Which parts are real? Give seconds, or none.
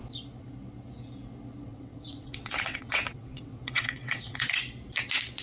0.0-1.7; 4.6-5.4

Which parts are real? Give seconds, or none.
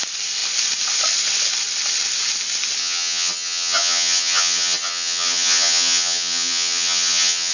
0.0-2.8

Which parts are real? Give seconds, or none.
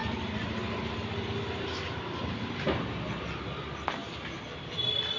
0.0-5.2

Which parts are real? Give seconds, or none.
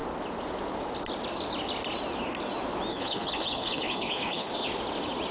0.0-2.9; 4.5-5.3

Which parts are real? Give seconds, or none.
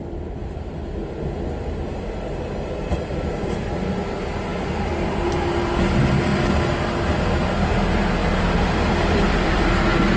0.0-0.4; 3.3-4.5; 5.3-8.2; 9.6-10.2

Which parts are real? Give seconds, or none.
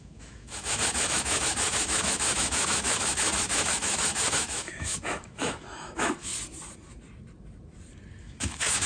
6.3-8.2